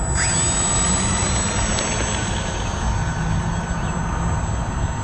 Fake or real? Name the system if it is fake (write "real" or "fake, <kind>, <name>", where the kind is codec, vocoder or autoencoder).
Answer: real